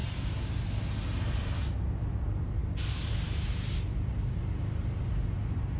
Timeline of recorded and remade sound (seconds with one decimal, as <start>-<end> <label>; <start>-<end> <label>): 0.0-5.8 recorded